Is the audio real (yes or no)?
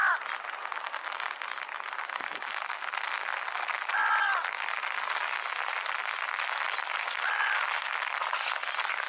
yes